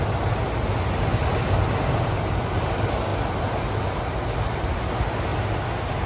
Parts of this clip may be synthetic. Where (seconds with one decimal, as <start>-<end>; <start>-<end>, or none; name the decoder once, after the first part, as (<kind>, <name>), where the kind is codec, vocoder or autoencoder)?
none